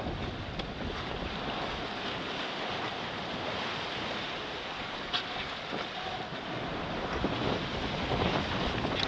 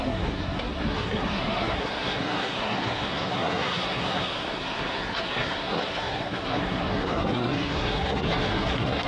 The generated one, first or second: second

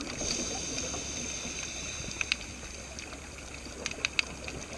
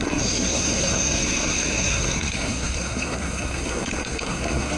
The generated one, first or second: second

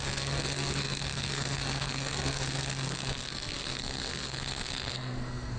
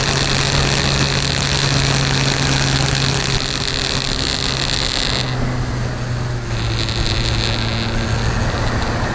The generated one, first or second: first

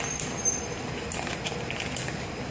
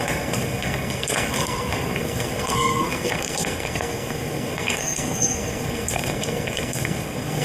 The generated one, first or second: second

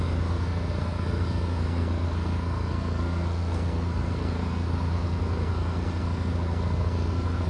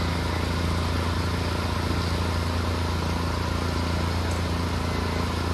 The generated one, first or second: first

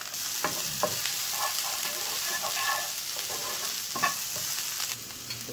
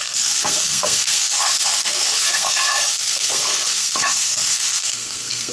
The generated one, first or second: second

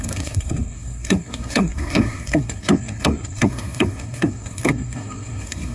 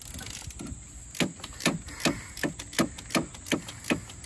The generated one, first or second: first